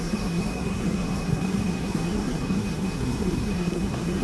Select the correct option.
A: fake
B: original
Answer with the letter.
A